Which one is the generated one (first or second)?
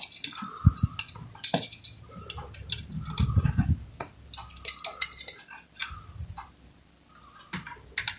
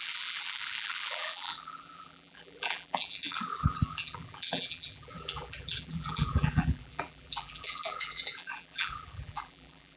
second